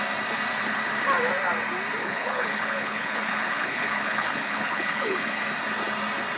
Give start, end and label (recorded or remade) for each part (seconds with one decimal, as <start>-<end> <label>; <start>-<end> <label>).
0.0-2.0 recorded; 2.0-5.4 remade; 5.4-6.4 recorded